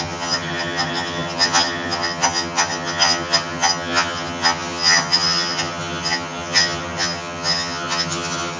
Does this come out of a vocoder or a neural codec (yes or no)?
yes